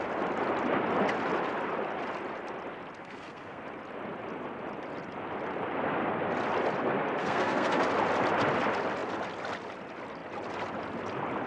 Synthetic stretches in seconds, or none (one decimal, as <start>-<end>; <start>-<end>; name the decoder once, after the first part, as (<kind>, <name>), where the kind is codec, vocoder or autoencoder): 3.0-3.6 (codec, SNAC); 7.2-7.8